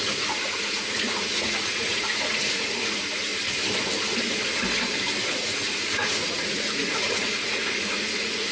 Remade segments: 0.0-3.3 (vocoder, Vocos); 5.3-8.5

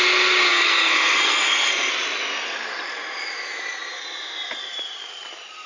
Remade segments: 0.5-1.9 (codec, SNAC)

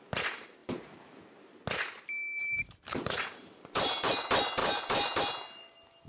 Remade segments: 2.4-4.1 (vocoder, BigVGAN v2); 4.6-5.2